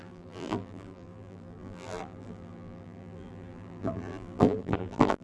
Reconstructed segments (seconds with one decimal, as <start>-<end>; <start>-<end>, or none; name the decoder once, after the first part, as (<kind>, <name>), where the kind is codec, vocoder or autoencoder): 0.0-5.2 (vocoder, BigVGAN v2)